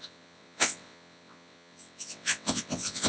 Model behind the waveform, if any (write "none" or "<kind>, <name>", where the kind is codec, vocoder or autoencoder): vocoder, WaveNeXt